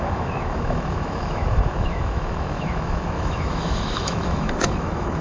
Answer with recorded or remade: remade